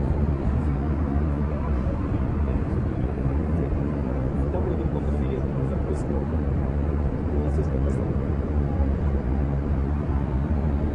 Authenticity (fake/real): fake